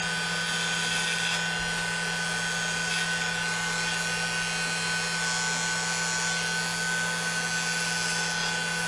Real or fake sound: real